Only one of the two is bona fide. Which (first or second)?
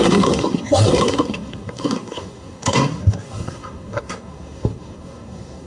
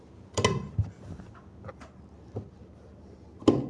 second